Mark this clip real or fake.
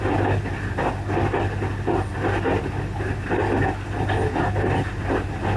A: real